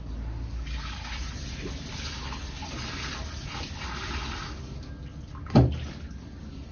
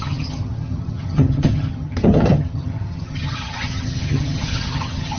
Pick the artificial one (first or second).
second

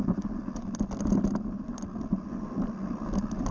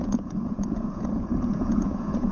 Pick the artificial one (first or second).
second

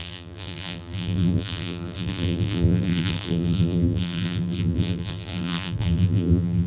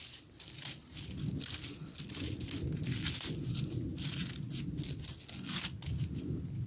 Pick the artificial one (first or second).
first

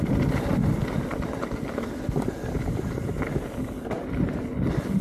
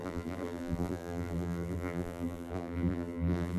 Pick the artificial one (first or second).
second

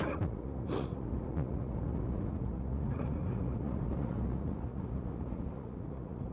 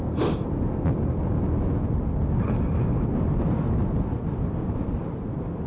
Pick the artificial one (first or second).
first